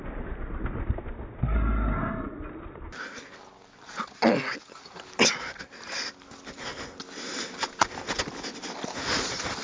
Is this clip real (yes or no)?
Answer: yes